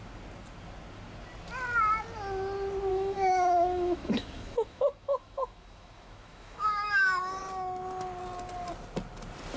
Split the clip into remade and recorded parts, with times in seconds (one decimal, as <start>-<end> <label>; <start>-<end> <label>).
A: 0.0-2.9 recorded; 2.9-7.4 remade; 7.4-9.6 recorded